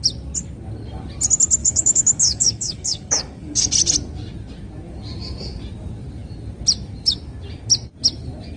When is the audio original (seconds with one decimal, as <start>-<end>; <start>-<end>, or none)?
0.0-1.6; 3.7-8.6